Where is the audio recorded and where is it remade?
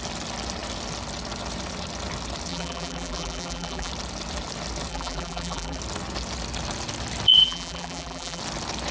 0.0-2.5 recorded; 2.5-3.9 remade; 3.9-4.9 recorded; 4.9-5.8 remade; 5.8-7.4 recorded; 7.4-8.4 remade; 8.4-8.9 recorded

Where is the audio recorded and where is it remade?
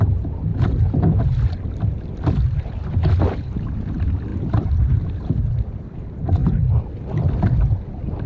0.0-0.5 recorded; 0.5-1.2 remade; 1.2-4.3 recorded; 4.3-5.3 remade; 5.3-8.3 recorded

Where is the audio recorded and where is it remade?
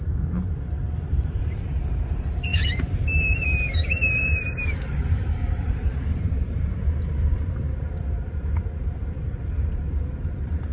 0.0-10.7 remade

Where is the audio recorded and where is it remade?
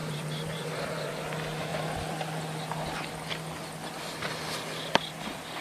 0.0-1.1 remade; 1.1-5.6 recorded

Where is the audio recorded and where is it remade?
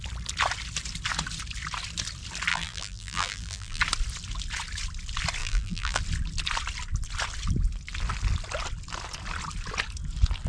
0.0-2.5 recorded; 2.5-3.8 remade; 3.8-5.4 recorded; 5.4-6.0 remade; 6.0-10.5 recorded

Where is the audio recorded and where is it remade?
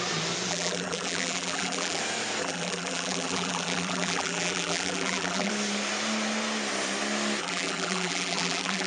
0.0-0.5 recorded; 0.5-2.0 remade; 2.0-2.4 recorded; 2.4-5.5 remade; 5.5-7.4 recorded; 7.4-8.9 remade